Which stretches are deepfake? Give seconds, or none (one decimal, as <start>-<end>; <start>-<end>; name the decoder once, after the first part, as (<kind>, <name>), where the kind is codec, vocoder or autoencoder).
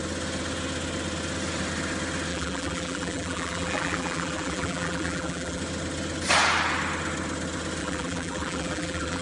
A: 2.3-5.6 (vocoder, BigVGAN v2); 7.8-9.2